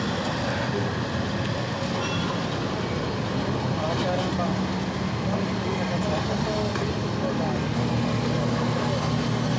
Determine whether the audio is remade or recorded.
recorded